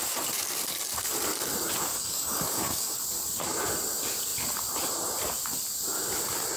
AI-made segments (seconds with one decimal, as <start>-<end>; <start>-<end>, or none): 1.9-3.0